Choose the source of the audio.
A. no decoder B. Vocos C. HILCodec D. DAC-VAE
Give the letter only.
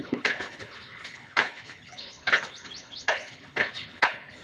C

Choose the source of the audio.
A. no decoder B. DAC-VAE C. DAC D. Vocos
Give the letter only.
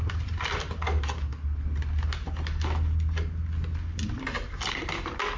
A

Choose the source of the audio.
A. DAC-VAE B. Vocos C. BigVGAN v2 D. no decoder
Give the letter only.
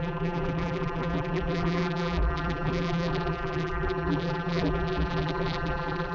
C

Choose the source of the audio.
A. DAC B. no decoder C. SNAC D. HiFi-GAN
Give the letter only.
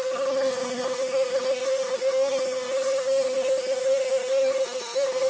C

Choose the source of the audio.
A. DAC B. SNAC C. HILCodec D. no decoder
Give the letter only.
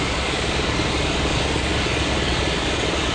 A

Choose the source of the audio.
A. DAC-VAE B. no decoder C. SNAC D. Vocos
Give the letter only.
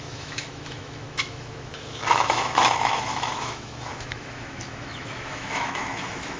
A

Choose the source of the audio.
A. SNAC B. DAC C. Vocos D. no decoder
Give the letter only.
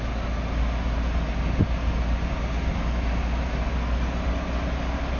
D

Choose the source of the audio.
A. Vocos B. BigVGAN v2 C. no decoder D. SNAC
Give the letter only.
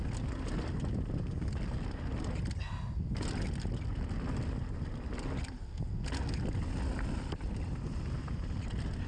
C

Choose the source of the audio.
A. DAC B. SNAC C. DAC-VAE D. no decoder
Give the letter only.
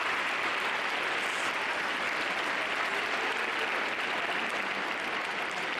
D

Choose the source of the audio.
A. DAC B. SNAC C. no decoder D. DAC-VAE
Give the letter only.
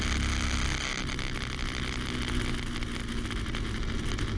C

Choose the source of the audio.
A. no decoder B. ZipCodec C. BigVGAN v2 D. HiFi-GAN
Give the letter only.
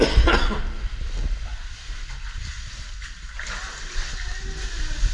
A